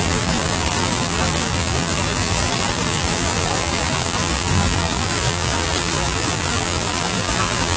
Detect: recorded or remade remade